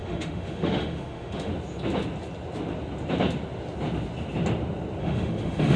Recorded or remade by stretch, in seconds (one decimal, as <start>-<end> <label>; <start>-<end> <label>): 0.0-1.5 remade; 1.5-5.0 recorded; 5.0-5.8 remade